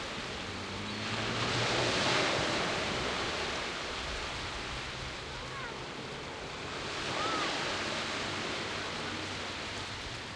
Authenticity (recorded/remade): recorded